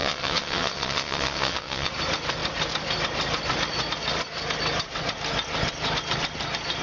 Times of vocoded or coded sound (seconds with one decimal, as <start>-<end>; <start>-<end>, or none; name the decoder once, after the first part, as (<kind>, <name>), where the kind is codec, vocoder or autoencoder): 0.0-1.9 (vocoder, WaveNeXt)